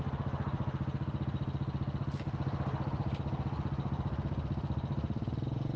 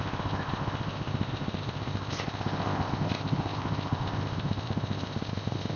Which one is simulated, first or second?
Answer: second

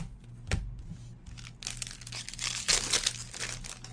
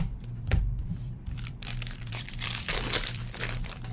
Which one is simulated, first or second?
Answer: second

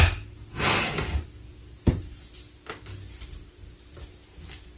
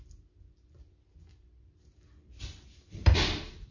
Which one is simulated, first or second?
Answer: second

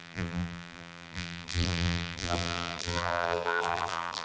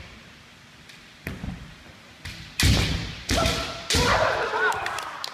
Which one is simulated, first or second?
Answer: first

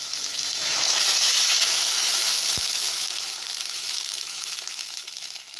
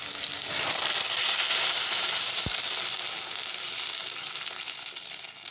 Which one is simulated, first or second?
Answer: first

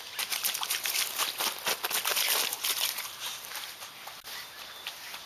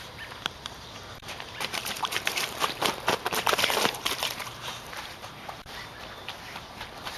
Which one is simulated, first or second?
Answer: second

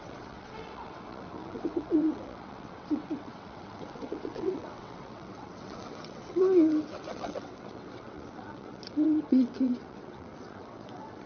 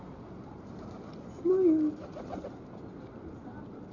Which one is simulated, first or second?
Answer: first